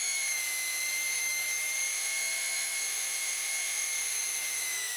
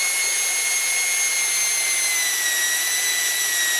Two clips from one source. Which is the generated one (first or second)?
first